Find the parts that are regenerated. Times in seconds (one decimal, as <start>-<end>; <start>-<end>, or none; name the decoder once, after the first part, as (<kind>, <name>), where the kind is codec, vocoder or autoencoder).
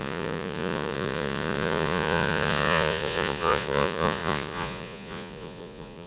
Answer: 0.0-6.1 (vocoder, Vocos)